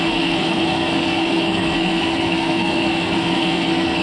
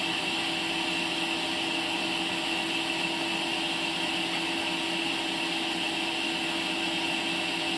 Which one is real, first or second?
second